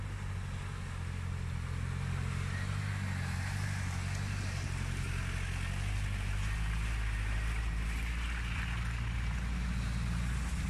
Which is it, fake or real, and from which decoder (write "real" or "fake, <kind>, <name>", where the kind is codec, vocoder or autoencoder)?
real